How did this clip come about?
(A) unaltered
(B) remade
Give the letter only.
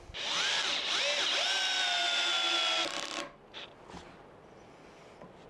A